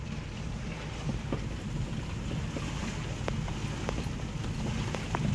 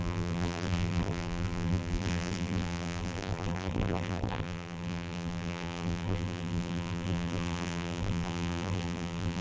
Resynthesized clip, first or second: second